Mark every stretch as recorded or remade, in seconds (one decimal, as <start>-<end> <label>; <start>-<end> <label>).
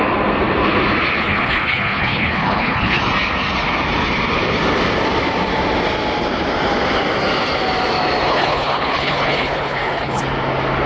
0.0-1.2 recorded; 1.2-3.0 remade; 3.0-8.3 recorded; 8.3-10.2 remade; 10.2-10.9 recorded